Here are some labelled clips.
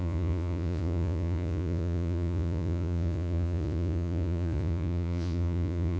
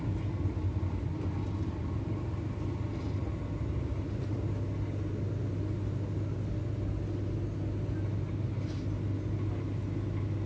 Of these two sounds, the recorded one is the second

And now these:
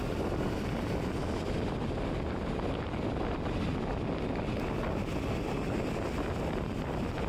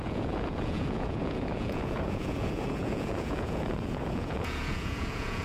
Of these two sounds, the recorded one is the first